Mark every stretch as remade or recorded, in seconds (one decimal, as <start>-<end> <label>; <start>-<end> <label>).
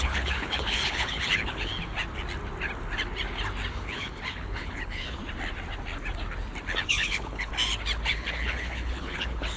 0.0-1.7 remade; 1.7-3.7 recorded; 3.7-5.2 remade; 5.2-6.9 recorded; 6.9-7.5 remade; 7.5-8.1 recorded; 8.1-9.6 remade